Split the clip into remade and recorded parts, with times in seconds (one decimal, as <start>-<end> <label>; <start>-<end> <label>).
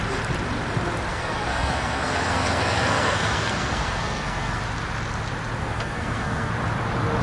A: 0.0-1.1 recorded; 1.1-4.6 remade; 4.6-5.6 recorded; 5.6-6.5 remade; 6.5-7.2 recorded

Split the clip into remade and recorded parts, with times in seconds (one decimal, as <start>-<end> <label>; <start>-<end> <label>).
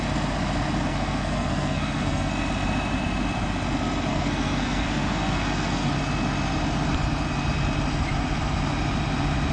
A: 0.0-0.9 recorded; 0.9-2.3 remade; 2.3-4.1 recorded; 4.1-5.9 remade; 5.9-9.5 recorded